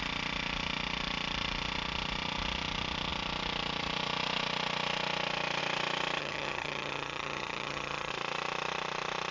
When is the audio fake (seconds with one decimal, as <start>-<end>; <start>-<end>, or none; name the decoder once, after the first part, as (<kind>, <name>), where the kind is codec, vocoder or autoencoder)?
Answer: 6.2-8.1 (vocoder, HiFi-GAN)